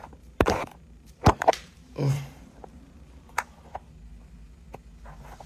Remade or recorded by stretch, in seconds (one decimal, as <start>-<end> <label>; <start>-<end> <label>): 0.0-3.3 remade; 3.3-5.5 recorded